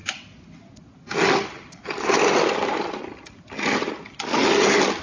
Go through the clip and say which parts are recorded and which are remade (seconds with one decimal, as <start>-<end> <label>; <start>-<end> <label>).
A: 0.0-5.0 recorded